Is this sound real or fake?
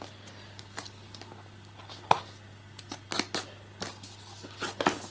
real